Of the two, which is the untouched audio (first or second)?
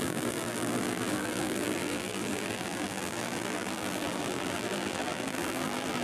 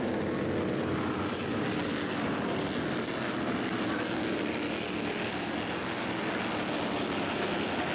second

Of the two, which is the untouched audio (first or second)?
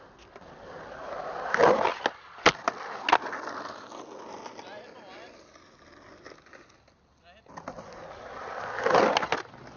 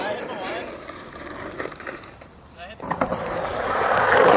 first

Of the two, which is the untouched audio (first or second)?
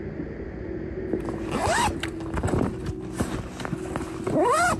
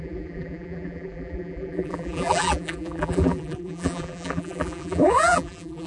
first